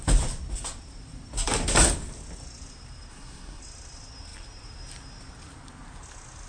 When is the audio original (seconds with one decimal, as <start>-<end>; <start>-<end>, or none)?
0.0-3.1; 3.6-6.5